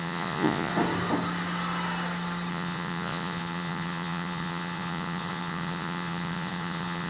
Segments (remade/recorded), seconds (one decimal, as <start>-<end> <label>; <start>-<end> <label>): 0.0-0.7 remade; 0.7-2.5 recorded; 2.5-7.1 remade